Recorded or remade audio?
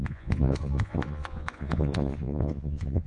remade